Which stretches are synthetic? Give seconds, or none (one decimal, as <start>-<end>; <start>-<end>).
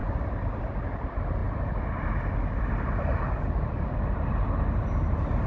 none